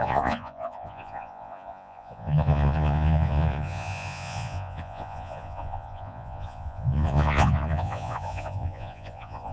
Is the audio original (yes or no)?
no